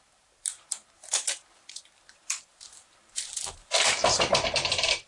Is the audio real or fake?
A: fake